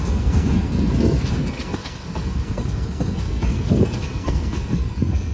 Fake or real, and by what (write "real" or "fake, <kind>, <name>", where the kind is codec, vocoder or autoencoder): fake, codec, SNAC